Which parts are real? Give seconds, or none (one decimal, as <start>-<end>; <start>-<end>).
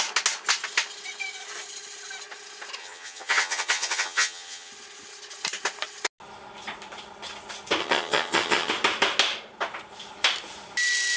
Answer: 0.0-2.8; 4.7-7.8; 8.7-11.2